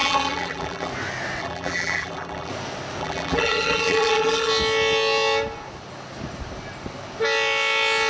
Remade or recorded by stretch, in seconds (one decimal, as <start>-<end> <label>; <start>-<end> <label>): 0.0-0.9 remade; 0.9-1.4 recorded; 1.4-2.5 remade; 2.5-3.0 recorded; 3.0-4.5 remade; 4.5-8.1 recorded